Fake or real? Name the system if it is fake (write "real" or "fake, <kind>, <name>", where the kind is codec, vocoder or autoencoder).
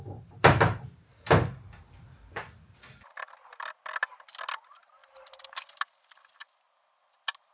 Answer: real